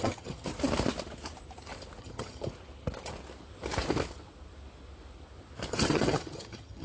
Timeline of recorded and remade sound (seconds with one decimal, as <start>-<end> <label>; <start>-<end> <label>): 0.0-0.5 remade; 0.5-2.0 recorded; 2.0-2.5 remade; 2.5-5.7 recorded; 5.7-6.8 remade